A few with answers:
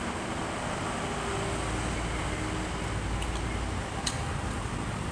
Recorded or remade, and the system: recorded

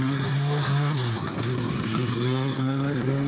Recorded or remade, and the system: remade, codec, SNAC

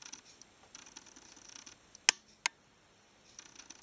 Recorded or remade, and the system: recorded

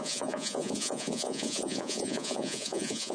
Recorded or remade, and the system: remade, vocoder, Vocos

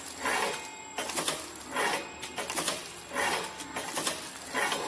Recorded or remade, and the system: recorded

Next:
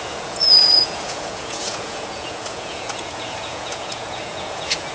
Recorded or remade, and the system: remade, vocoder, Vocos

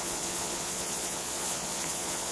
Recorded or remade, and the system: remade, vocoder, Vocos